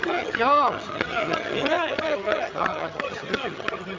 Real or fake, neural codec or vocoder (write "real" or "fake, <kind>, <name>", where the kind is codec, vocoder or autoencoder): fake, vocoder, HiFi-GAN